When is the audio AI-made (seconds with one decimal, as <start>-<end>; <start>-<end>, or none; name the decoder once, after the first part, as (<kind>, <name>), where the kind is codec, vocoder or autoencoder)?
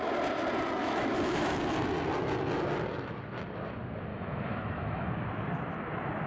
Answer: 0.8-1.6 (autoencoder, DAC-VAE); 4.1-5.1